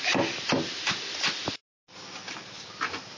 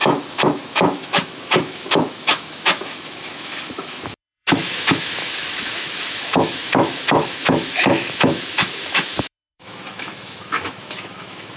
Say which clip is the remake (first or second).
second